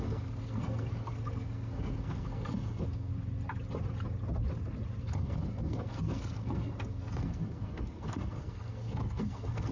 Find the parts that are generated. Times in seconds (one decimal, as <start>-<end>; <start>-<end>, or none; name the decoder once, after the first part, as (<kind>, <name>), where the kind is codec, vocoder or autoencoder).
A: 0.0-3.1 (codec, SNAC); 5.0-9.7